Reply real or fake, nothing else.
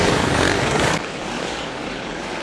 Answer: fake